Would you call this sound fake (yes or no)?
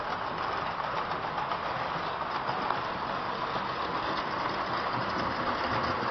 no